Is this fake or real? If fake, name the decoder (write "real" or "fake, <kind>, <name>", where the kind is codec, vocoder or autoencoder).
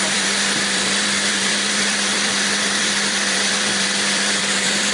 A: fake, vocoder, BigVGAN v2